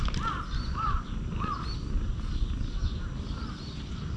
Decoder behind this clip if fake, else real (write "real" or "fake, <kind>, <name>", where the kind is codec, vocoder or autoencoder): real